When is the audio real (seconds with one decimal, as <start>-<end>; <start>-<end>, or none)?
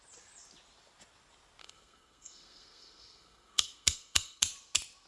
0.0-1.6; 4.4-5.1